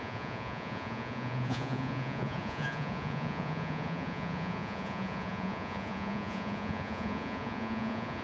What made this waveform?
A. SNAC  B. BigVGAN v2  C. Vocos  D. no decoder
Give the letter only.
C